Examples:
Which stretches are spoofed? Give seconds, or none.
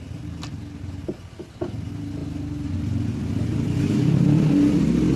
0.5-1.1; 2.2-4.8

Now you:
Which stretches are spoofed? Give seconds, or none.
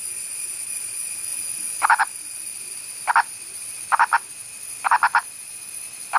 0.0-2.5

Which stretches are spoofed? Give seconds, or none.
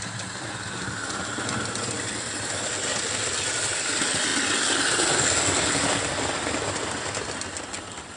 none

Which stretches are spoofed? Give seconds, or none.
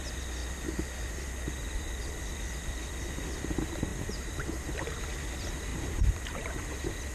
3.9-5.0; 5.7-6.5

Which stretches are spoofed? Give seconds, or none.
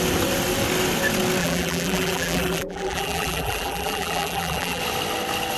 1.4-4.8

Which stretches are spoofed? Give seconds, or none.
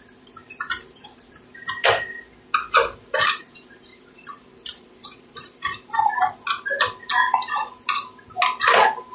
0.4-1.3; 3.9-6.1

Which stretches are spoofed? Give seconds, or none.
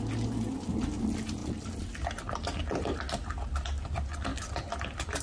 4.3-5.2